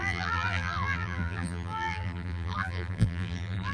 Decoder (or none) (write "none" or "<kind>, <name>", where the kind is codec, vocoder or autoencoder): vocoder, BigVGAN v2